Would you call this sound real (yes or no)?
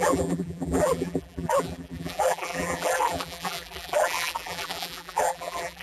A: no